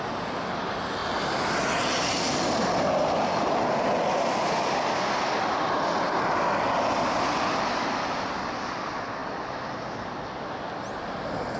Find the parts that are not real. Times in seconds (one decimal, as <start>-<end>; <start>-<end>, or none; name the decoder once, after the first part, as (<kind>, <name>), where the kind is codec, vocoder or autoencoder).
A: none